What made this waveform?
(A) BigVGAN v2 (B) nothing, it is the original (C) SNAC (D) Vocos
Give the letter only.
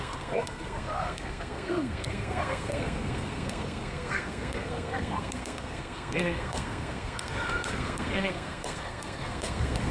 C